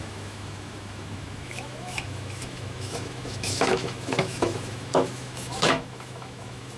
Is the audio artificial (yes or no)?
yes